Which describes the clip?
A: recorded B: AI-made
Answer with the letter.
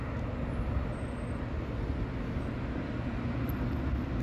A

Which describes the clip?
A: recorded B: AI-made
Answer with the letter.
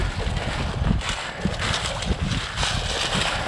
A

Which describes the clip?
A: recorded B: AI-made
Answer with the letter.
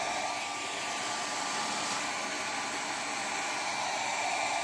A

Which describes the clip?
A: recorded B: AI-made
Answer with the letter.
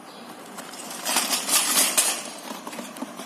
B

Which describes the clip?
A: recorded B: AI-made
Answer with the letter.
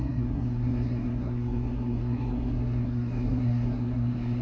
B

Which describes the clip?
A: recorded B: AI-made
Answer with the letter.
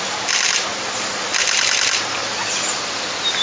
A